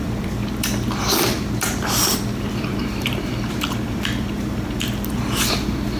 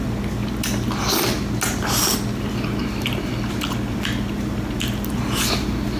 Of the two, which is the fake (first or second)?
first